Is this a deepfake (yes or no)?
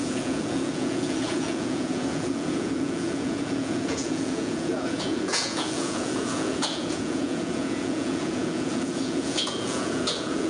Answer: yes